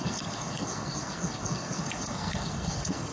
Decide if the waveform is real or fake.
fake